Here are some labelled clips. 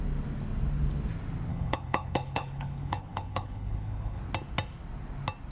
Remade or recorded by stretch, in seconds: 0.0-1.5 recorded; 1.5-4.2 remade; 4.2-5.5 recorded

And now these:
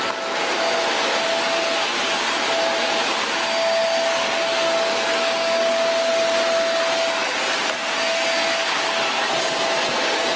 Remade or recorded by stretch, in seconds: 0.0-3.8 recorded; 3.8-5.9 remade; 5.9-10.4 recorded

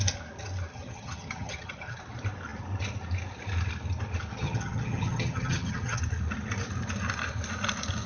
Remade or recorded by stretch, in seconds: 0.0-0.7 recorded; 0.7-2.0 remade; 2.0-4.3 recorded; 4.3-6.0 remade; 6.0-8.1 recorded

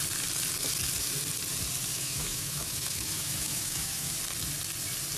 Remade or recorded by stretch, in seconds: 0.0-1.9 recorded; 1.9-4.1 remade; 4.1-5.2 recorded

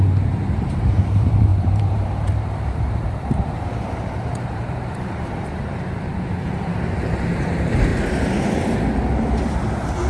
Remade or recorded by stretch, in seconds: 0.0-7.9 remade; 7.9-10.1 recorded

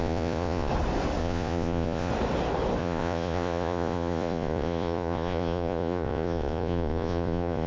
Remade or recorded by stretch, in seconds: 0.0-0.7 remade; 0.7-1.2 recorded; 1.2-2.1 remade; 2.1-2.8 recorded; 2.8-7.7 remade